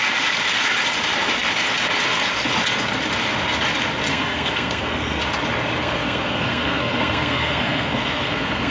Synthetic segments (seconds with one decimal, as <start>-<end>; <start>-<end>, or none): 4.1-5.2; 5.8-8.7